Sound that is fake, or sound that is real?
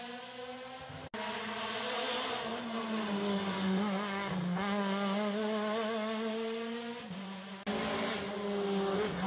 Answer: real